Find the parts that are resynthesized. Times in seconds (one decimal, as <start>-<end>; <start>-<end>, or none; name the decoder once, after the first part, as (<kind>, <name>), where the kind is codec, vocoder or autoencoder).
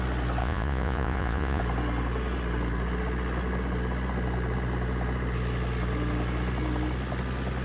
0.4-1.6 (vocoder, Vocos)